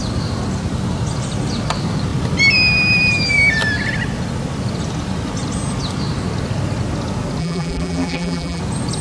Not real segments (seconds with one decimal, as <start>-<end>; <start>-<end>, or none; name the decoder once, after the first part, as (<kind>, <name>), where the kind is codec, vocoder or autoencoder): 7.4-8.6 (vocoder, BigVGAN v2)